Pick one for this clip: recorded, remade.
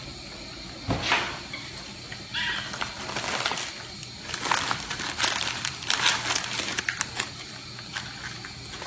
recorded